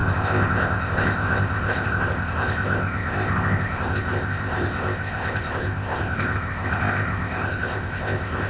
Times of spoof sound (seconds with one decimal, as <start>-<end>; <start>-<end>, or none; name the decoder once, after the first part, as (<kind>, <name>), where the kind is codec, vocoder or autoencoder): 0.0-8.5 (codec, ZipCodec)